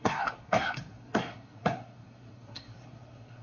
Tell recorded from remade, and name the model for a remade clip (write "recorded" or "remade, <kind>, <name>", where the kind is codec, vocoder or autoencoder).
remade, codec, SNAC